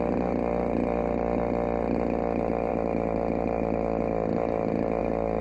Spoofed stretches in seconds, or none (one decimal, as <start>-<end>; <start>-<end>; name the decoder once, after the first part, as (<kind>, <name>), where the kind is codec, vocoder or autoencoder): none